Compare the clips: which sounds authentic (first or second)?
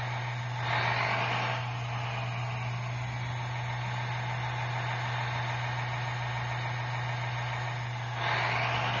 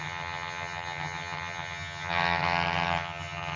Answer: first